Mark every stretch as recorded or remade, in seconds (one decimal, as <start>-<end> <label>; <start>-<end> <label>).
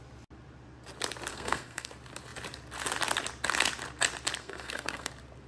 0.0-1.3 recorded; 1.3-1.9 remade; 1.9-4.4 recorded; 4.4-5.1 remade; 5.1-5.5 recorded